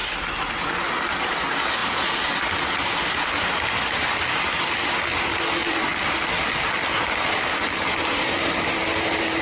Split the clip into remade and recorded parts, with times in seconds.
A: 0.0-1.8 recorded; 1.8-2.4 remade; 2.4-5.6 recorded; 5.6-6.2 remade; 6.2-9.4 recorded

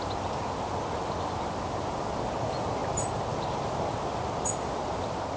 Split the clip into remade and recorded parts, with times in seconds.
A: 0.0-5.4 recorded

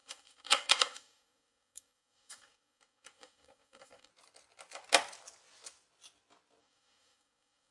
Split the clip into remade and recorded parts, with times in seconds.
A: 0.0-4.1 remade; 4.1-6.6 recorded; 6.6-7.7 remade

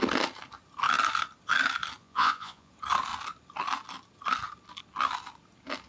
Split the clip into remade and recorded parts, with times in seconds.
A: 0.0-2.0 recorded; 2.0-2.7 remade; 2.7-5.9 recorded

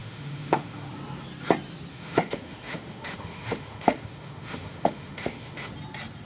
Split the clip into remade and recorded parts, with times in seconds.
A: 0.0-0.9 remade; 0.9-1.9 recorded; 1.9-5.7 remade; 5.7-6.3 recorded